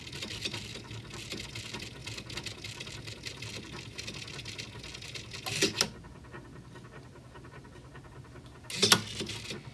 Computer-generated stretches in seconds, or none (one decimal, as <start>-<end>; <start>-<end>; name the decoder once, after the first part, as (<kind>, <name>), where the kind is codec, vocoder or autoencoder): none